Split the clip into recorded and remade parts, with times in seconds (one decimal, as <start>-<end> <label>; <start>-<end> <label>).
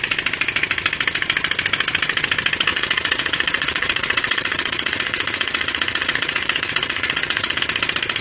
0.0-2.7 recorded; 2.7-7.6 remade; 7.6-8.2 recorded